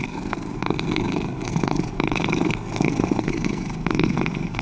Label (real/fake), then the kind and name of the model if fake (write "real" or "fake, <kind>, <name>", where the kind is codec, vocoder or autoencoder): fake, codec, SNAC